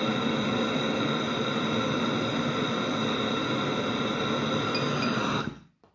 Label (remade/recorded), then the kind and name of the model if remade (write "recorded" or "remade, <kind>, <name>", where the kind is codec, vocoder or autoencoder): recorded